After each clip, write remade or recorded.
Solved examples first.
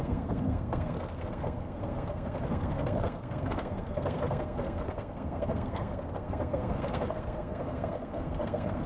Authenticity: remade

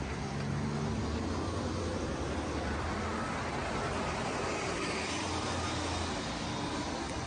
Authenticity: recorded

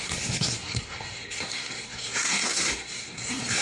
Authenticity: remade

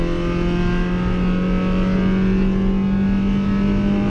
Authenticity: recorded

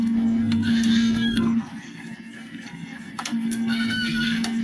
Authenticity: remade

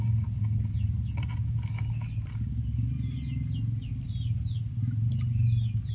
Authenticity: recorded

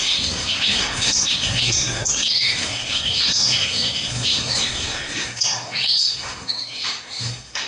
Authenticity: remade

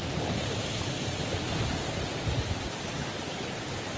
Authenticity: recorded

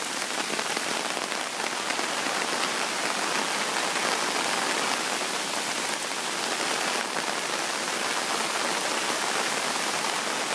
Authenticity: recorded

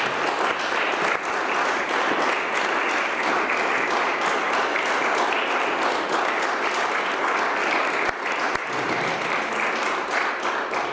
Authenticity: recorded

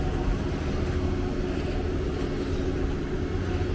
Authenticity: recorded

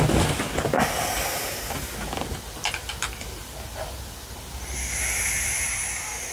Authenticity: recorded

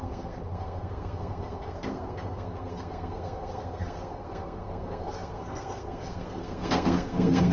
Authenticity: remade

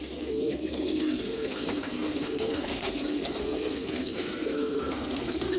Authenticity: remade